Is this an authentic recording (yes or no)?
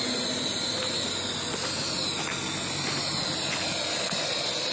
yes